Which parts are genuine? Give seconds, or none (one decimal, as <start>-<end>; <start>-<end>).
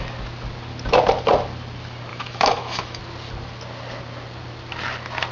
0.0-2.1; 3.0-5.3